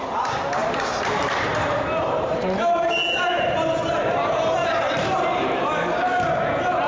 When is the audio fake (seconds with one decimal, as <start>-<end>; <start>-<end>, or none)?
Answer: 0.6-4.7